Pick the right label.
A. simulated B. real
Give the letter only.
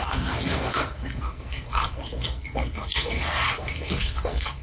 A